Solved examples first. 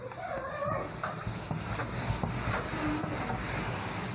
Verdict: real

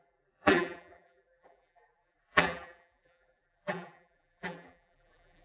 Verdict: fake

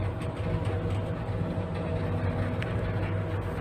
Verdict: real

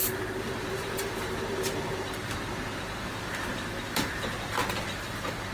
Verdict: fake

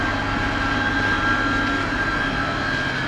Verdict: real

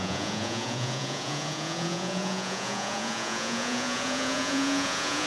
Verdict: fake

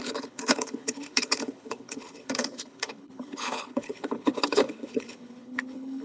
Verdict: fake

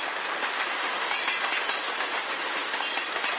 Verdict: real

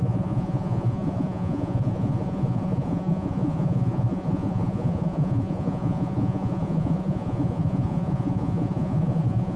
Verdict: fake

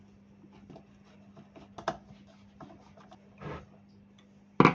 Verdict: real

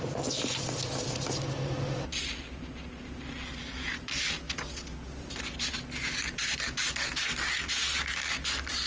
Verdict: real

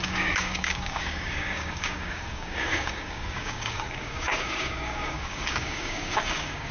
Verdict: fake